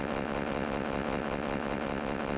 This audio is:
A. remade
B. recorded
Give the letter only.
A